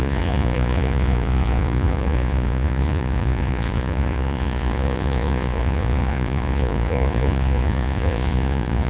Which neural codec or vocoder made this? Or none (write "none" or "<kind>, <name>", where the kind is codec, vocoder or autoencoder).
vocoder, Vocos